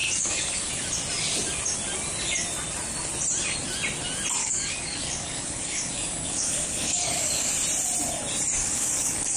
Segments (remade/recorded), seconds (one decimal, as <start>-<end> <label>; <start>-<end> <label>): 0.0-0.7 remade; 0.7-4.4 recorded; 4.4-7.5 remade; 7.5-8.6 recorded; 8.6-9.4 remade